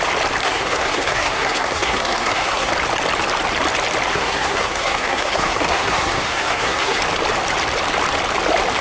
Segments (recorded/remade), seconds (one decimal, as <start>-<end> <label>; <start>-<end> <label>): 0.0-0.4 recorded; 0.4-2.7 remade; 2.7-4.1 recorded; 4.1-7.0 remade; 7.0-8.8 recorded